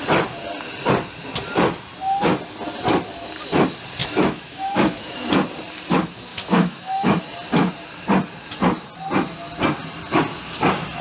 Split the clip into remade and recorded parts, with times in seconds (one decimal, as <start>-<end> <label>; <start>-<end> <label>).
0.0-4.0 recorded; 4.0-5.2 remade; 5.2-6.3 recorded; 6.3-7.2 remade; 7.2-11.0 recorded

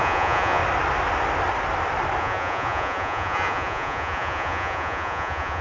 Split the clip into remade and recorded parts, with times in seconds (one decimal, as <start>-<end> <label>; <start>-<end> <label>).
0.0-0.6 remade; 0.6-2.2 recorded; 2.2-5.6 remade

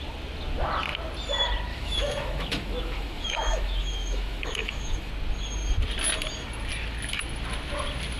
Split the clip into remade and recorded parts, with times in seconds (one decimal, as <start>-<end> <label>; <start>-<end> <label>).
0.0-1.7 recorded; 1.7-5.1 remade; 5.1-8.2 recorded

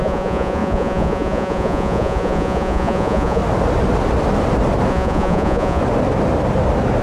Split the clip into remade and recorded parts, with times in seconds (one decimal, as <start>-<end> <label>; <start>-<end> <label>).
0.0-3.4 remade; 3.4-4.9 recorded; 4.9-5.8 remade; 5.8-7.0 recorded

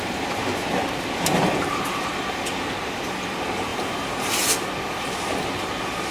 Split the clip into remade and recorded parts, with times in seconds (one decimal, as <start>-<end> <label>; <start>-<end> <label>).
0.0-6.1 recorded

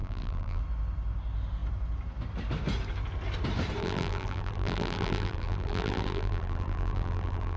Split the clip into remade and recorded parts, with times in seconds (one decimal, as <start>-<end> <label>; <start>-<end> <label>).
0.0-0.6 remade; 0.6-3.8 recorded; 3.8-7.6 remade